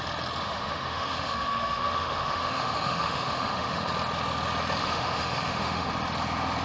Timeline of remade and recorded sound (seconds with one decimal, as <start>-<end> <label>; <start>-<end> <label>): 0.0-0.4 recorded; 0.4-3.9 remade; 3.9-4.8 recorded; 4.8-5.9 remade; 5.9-6.6 recorded